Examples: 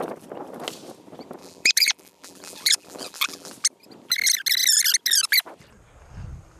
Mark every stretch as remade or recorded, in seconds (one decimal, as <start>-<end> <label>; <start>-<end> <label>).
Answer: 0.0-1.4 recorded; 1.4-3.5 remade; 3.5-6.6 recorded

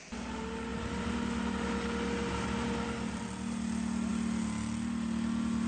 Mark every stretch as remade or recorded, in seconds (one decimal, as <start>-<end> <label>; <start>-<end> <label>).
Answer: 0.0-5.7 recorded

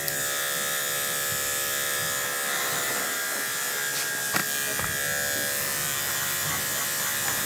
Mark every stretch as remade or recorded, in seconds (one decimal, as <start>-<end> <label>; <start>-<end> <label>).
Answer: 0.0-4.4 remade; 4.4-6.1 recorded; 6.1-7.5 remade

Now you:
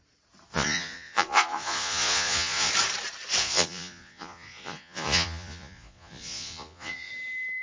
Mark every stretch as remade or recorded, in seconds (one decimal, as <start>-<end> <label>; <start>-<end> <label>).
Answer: 0.0-0.5 recorded; 0.5-2.7 remade; 2.7-3.4 recorded; 3.4-7.1 remade; 7.1-7.6 recorded

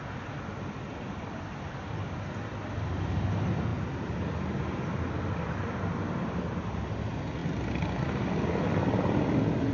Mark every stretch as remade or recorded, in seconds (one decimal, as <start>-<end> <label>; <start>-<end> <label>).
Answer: 0.0-9.7 recorded

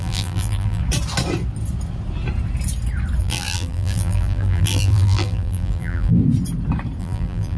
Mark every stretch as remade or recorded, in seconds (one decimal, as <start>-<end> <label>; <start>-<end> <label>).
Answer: 0.0-0.8 remade; 0.8-3.2 recorded; 3.2-6.2 remade; 6.2-7.0 recorded; 7.0-7.6 remade

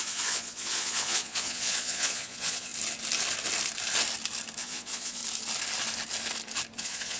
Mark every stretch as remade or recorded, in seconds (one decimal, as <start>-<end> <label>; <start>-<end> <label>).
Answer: 0.0-2.7 remade; 2.7-4.6 recorded; 4.6-5.2 remade; 5.2-6.8 recorded; 6.8-7.2 remade